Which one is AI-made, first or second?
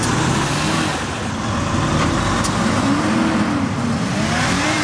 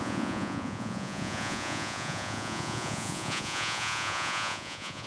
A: second